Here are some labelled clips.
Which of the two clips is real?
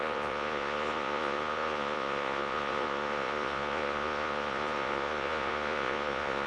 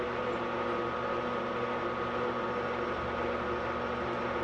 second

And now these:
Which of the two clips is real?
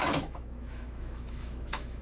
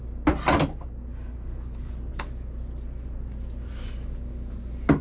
second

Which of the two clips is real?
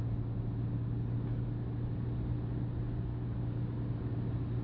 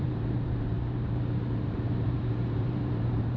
first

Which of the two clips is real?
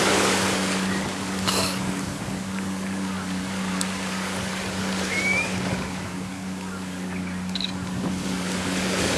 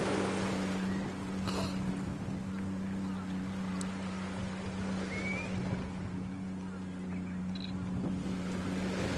second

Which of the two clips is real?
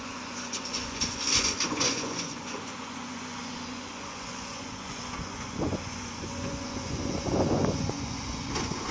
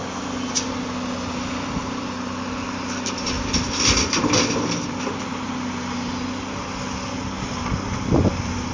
second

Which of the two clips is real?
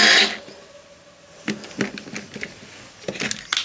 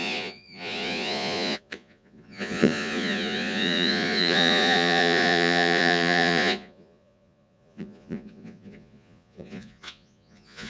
first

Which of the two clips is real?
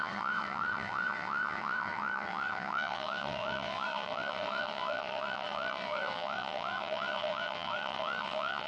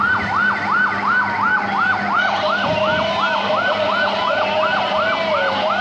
second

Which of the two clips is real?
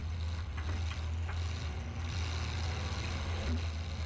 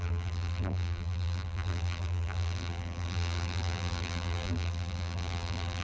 first